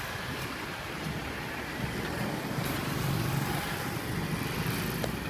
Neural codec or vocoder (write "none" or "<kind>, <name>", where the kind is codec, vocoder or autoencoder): none